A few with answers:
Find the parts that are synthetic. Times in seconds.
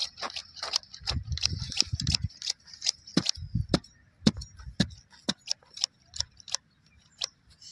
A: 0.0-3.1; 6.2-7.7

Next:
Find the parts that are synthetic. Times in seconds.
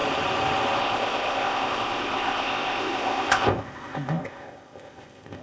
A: 0.8-5.4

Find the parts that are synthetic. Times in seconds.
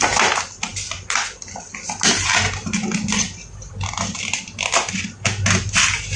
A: none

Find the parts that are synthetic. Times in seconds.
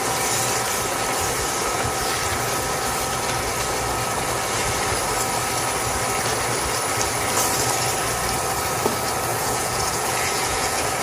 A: 9.3-11.0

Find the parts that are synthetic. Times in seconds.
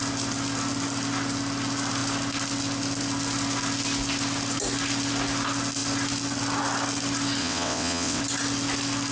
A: 7.4-8.2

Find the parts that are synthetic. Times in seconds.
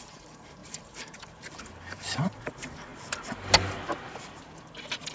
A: 0.0-2.9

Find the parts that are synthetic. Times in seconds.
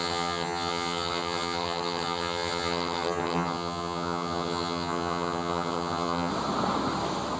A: 0.0-6.3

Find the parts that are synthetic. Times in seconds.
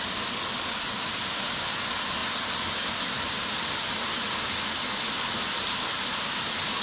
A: none